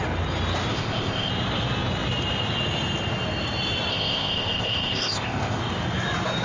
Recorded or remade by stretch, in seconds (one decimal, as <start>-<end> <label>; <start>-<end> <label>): 0.0-0.7 recorded; 0.7-1.3 remade; 1.3-3.9 recorded; 3.9-5.6 remade; 5.6-6.4 recorded